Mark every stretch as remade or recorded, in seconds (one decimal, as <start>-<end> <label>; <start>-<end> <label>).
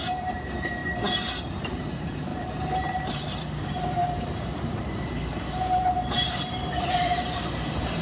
0.0-0.8 remade; 0.8-1.5 recorded; 1.5-8.0 remade